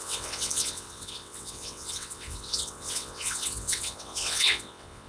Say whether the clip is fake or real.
fake